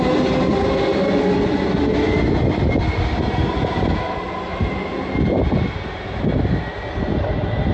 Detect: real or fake real